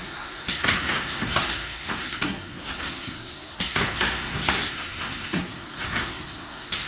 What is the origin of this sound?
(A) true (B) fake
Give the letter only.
B